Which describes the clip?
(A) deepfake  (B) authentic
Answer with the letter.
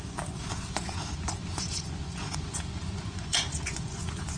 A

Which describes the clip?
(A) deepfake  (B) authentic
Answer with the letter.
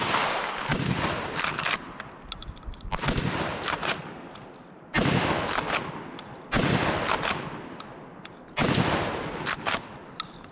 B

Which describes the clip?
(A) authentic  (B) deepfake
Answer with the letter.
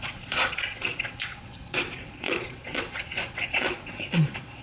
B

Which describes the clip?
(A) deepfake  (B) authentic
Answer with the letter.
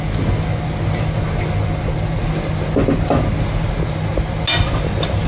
B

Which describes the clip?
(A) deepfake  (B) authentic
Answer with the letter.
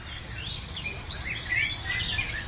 B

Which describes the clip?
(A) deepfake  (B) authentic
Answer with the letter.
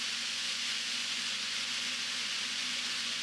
A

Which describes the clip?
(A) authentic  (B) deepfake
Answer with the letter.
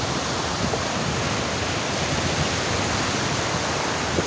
A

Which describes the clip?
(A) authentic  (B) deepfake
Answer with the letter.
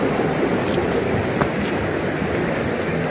A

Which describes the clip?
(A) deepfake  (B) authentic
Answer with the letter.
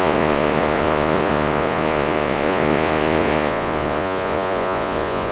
A